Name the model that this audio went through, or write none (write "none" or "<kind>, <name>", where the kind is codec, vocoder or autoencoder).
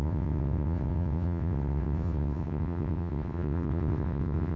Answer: vocoder, WaveNeXt